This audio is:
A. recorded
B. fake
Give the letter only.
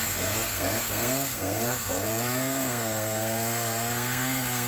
B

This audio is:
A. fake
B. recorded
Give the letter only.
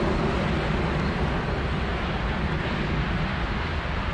B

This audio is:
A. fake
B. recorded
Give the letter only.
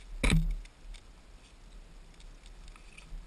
B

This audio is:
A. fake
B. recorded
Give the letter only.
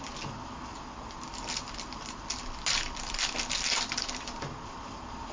B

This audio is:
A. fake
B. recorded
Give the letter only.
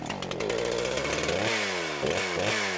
B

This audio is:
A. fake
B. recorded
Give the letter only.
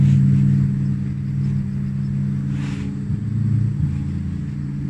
B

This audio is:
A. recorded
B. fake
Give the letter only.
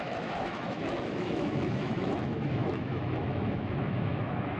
B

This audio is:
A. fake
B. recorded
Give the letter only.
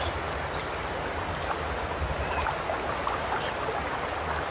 B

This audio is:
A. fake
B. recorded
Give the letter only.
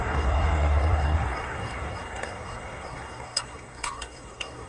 A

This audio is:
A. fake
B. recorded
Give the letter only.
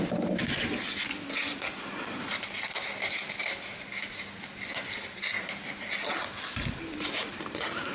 B